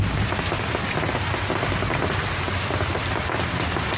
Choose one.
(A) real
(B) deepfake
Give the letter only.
A